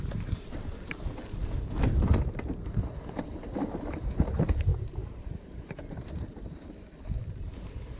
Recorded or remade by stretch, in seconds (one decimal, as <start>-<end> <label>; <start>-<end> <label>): 0.0-8.0 remade